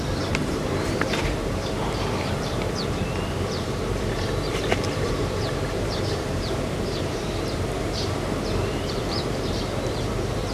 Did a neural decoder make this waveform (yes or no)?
yes